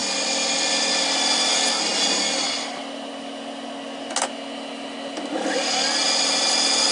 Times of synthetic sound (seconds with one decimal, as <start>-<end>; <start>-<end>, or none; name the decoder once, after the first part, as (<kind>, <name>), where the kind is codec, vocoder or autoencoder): none